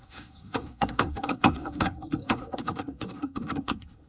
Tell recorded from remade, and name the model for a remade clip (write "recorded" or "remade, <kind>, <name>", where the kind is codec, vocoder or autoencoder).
remade, codec, SNAC